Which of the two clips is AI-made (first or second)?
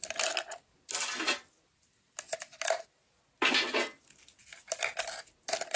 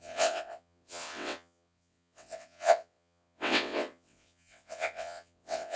second